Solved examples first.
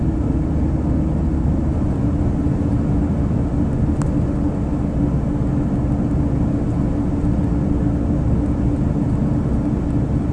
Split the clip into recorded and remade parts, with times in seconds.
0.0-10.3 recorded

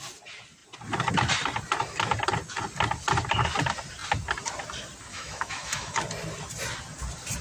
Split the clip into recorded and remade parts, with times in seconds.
0.0-5.1 recorded; 5.1-6.0 remade; 6.0-7.4 recorded

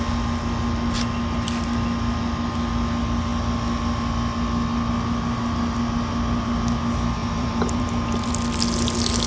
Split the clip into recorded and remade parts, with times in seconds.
0.0-7.2 recorded; 7.2-8.3 remade; 8.3-9.3 recorded

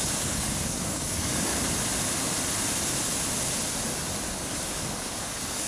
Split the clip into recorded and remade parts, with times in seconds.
0.0-1.5 remade; 1.5-4.3 recorded; 4.3-5.7 remade

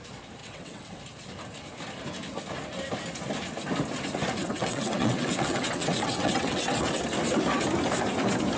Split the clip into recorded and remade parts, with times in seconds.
0.0-0.4 recorded; 0.4-1.0 remade; 1.0-4.4 recorded; 4.4-7.0 remade; 7.0-8.6 recorded